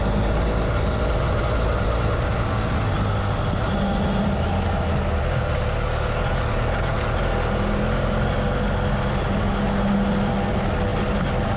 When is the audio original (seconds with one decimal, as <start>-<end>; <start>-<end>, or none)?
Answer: 0.0-11.6